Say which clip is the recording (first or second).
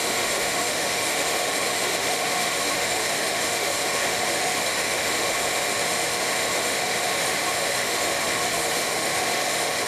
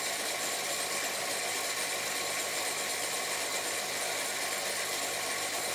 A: second